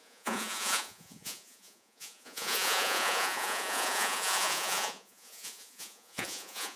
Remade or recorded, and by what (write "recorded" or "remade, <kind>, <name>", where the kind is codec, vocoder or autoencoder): remade, vocoder, Vocos